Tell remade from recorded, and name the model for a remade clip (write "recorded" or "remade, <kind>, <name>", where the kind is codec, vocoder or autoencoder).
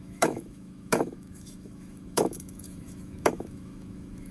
remade, autoencoder, DAC-VAE